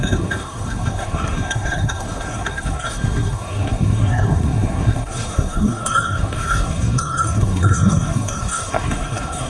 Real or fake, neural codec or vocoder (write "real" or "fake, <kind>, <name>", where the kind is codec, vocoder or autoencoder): fake, codec, SNAC